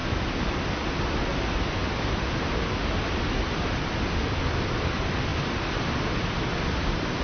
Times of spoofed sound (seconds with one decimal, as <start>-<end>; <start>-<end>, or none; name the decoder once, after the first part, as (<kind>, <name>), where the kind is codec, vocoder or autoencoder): 0.0-0.6 (vocoder, BigVGAN v2); 5.3-7.2